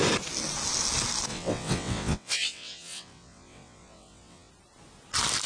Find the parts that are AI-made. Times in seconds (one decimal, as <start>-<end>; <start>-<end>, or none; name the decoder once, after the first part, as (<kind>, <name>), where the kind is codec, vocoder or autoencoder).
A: 1.3-4.5 (vocoder, WaveNeXt)